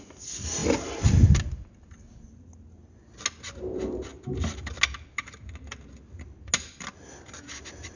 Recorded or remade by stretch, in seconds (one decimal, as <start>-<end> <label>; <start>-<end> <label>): 0.0-8.0 recorded